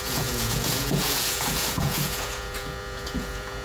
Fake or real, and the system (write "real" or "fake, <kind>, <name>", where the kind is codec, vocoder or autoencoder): fake, vocoder, Vocos